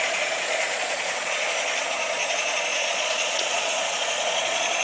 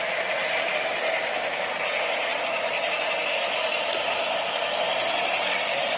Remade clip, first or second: first